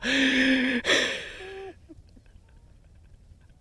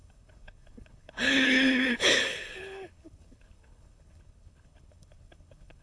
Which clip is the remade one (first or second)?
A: second